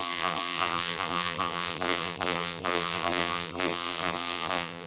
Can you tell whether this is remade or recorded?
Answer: remade